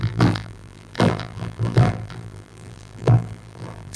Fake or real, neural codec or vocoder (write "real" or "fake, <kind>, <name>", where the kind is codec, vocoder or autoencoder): fake, vocoder, BigVGAN v2